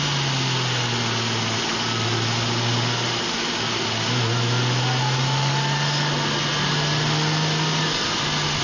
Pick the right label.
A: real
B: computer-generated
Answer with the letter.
A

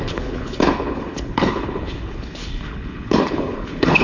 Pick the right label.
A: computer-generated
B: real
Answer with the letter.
A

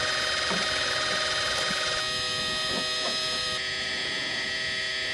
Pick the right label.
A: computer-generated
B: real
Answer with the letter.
B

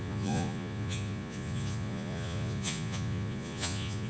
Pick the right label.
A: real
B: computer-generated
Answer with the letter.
B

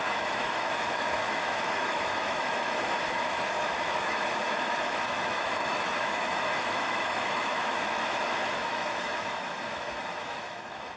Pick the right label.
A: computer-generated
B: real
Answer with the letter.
A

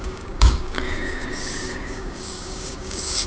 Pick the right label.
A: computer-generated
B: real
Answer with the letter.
A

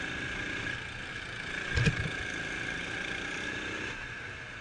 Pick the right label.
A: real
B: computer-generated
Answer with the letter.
A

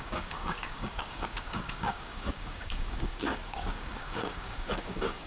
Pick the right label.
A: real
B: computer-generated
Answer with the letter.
B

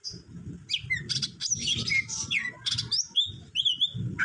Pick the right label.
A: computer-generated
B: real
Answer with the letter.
B